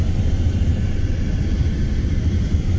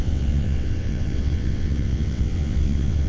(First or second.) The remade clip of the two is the second